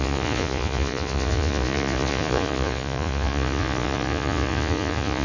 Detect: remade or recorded remade